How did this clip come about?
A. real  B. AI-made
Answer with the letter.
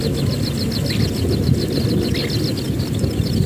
A